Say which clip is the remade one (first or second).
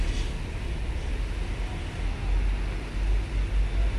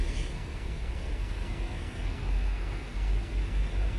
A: second